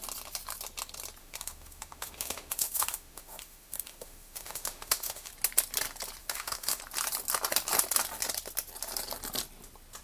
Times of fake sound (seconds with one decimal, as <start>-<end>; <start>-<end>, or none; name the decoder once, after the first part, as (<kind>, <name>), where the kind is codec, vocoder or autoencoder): 1.2-5.3 (autoencoder, DAC-VAE); 6.2-6.8